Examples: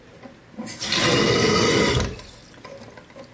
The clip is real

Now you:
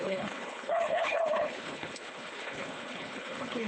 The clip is fake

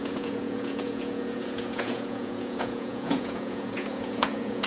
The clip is fake